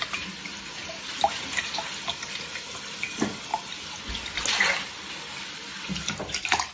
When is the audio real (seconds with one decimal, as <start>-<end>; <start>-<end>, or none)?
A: 0.0-6.7